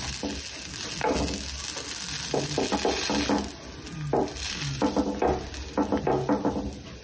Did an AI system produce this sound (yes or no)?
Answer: no